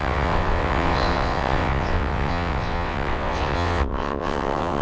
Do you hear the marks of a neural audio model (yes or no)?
yes